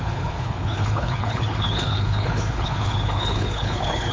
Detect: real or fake fake